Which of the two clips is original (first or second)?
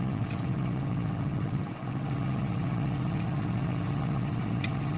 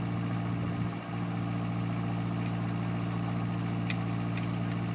second